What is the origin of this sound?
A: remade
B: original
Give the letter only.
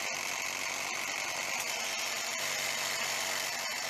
B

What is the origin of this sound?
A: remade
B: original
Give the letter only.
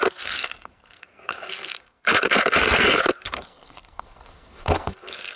A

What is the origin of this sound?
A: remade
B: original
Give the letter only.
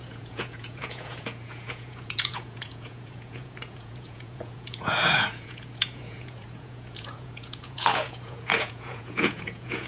A